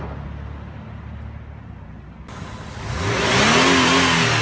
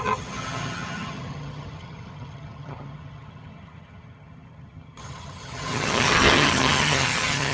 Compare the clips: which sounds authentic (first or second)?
first